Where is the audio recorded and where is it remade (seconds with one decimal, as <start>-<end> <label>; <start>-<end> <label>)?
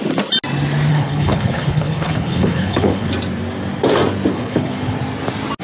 0.0-0.9 recorded; 0.9-3.1 remade; 3.1-4.3 recorded; 4.3-5.0 remade; 5.0-5.6 recorded